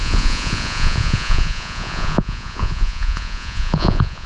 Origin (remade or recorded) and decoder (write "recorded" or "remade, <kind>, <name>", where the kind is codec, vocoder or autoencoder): remade, vocoder, Vocos